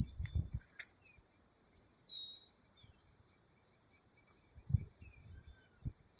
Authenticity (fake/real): fake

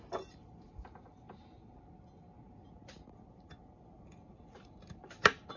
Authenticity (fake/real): real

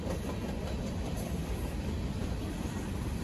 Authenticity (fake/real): fake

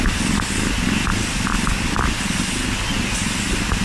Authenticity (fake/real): real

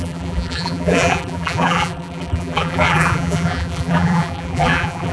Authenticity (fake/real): fake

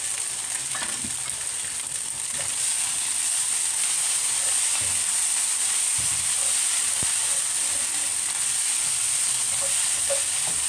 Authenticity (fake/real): real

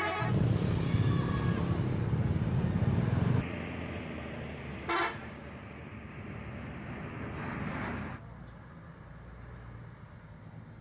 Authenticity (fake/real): real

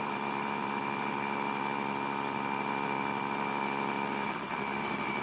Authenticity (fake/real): fake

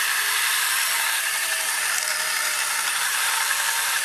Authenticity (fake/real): fake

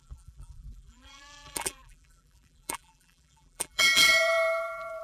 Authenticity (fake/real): fake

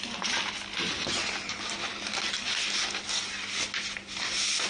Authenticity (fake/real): real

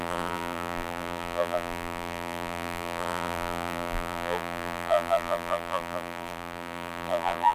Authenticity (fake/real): fake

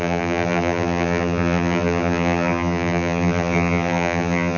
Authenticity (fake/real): fake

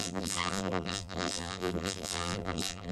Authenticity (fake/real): fake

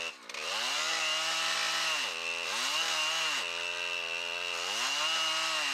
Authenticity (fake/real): real